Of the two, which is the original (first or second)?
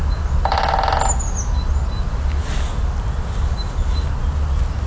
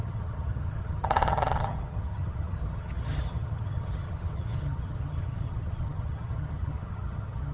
first